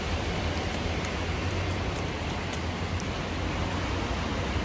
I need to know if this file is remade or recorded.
recorded